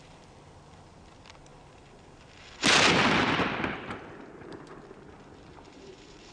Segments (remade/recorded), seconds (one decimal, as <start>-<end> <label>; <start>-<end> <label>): 0.0-6.3 recorded